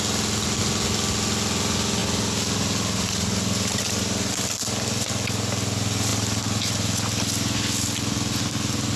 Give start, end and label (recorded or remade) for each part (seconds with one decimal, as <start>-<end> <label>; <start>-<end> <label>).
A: 0.0-9.0 recorded